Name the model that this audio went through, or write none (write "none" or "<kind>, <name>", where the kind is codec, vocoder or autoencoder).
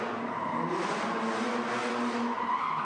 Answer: none